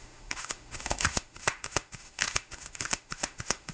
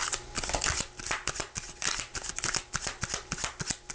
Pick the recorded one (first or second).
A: second